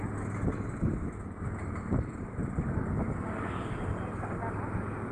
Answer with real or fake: real